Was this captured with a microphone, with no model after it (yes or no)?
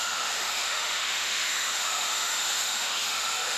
no